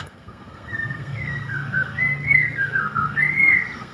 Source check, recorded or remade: remade